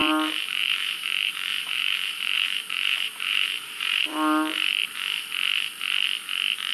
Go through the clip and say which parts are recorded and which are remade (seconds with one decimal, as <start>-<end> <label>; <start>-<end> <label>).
0.0-4.0 remade; 4.0-6.7 recorded